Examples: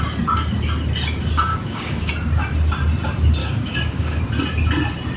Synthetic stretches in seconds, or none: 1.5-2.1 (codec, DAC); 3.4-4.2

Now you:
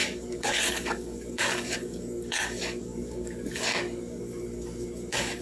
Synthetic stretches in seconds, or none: 0.0-5.4 (codec, DAC)

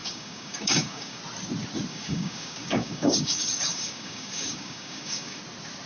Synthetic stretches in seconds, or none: 0.0-1.2 (codec, DAC); 1.9-5.4